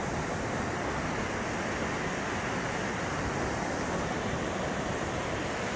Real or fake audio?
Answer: real